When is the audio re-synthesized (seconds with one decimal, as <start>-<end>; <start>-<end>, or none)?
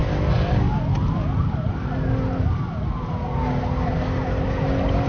none